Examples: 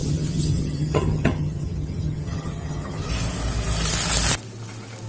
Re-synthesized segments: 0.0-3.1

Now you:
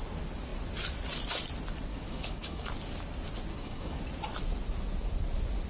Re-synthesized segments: 1.9-2.7; 3.5-4.0